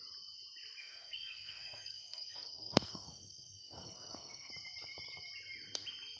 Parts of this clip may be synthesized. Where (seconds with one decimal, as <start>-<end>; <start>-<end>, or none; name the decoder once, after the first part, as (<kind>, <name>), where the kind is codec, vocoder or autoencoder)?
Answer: 0.8-4.5 (codec, SNAC)